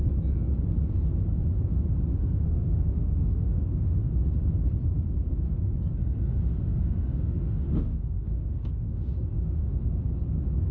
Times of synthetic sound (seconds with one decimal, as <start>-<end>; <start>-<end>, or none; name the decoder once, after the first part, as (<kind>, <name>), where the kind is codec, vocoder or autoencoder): 2.1-4.1 (autoencoder, DAC-VAE); 6.3-10.0